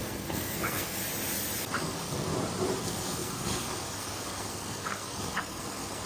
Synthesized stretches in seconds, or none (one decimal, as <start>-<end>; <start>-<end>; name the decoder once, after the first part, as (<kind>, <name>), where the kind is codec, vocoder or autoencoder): 0.0-1.0 (codec, SNAC); 1.6-2.3; 2.8-6.1